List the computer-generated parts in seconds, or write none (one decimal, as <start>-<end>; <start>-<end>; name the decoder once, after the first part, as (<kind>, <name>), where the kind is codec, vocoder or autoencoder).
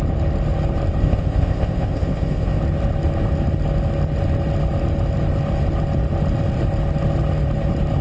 1.0-2.6 (codec, ZipCodec)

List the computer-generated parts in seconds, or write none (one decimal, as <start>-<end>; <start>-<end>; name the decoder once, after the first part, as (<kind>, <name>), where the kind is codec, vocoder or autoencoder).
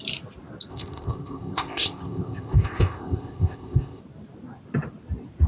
0.7-4.0 (codec, ZipCodec)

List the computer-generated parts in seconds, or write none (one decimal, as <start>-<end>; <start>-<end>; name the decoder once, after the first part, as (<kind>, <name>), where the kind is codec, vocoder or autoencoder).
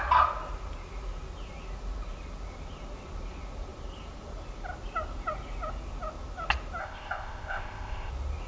6.8-8.1 (codec, ZipCodec)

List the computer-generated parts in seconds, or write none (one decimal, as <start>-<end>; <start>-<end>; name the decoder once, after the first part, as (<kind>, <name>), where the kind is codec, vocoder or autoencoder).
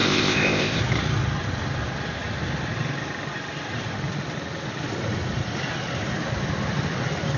0.0-0.8 (codec, ZipCodec)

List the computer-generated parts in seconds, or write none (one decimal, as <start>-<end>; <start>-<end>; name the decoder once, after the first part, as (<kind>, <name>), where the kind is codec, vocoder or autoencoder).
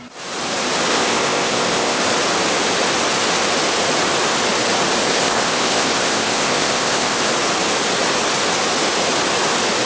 0.9-2.0 (codec, ZipCodec); 5.1-7.3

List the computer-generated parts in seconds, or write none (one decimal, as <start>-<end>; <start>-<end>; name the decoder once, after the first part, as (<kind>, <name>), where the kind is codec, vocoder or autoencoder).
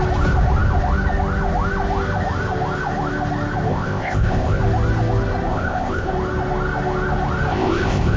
3.7-4.6 (codec, ZipCodec); 5.5-6.1; 7.5-8.2